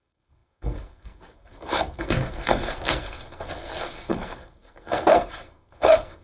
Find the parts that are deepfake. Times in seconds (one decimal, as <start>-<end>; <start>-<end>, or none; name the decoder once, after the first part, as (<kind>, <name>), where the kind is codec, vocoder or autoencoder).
0.0-6.2 (codec, SNAC)